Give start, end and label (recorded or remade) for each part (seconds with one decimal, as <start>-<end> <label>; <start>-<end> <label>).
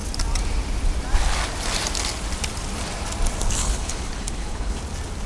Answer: 0.0-3.6 recorded; 3.6-4.8 remade; 4.8-5.3 recorded